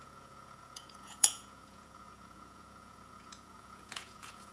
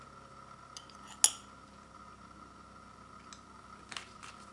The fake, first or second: first